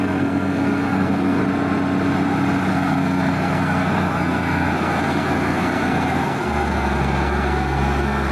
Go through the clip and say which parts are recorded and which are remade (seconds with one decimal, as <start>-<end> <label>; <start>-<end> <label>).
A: 0.0-1.4 remade; 1.4-2.7 recorded; 2.7-8.3 remade